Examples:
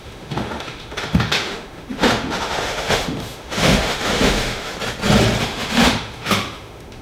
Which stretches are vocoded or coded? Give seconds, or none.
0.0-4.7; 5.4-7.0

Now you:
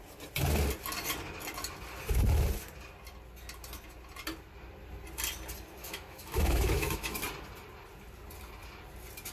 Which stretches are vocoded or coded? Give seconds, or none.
5.8-7.2

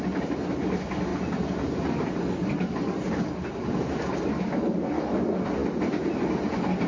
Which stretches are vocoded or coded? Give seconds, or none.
none

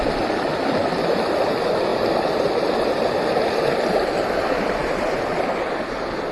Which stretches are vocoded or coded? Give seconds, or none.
none